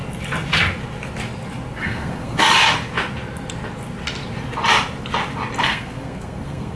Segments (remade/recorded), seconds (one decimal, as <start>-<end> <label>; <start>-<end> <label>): 0.0-1.8 recorded; 1.8-2.4 remade; 2.4-5.6 recorded; 5.6-6.8 remade